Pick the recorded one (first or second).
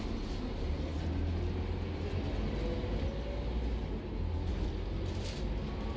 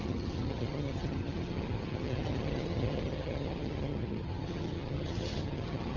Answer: first